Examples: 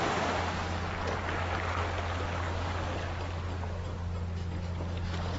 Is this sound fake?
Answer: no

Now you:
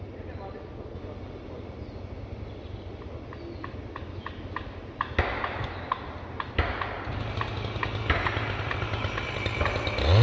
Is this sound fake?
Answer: no